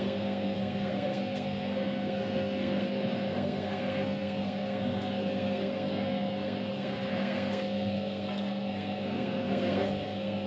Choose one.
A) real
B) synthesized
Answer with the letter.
B